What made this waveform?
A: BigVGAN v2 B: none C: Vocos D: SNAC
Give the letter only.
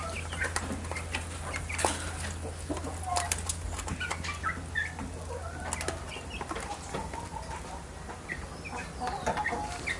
B